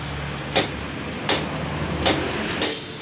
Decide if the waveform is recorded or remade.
recorded